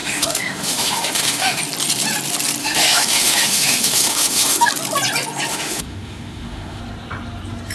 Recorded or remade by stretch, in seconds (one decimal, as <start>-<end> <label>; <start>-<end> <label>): 0.0-1.6 remade; 1.6-2.6 recorded; 2.6-4.7 remade; 4.7-5.5 recorded; 5.5-6.8 remade; 6.8-7.7 recorded